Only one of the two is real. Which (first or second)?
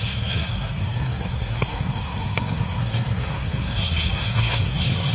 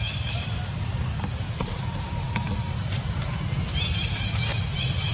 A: second